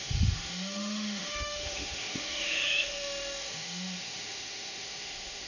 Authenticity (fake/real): fake